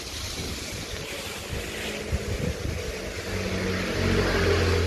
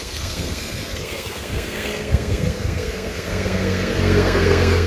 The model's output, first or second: second